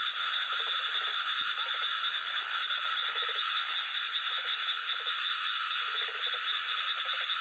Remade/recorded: remade